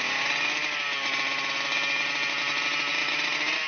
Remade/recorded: recorded